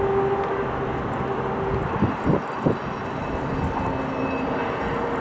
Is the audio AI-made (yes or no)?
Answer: no